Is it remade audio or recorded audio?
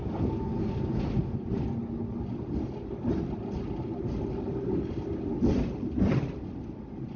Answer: recorded